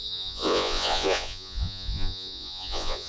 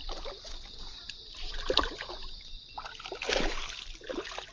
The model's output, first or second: first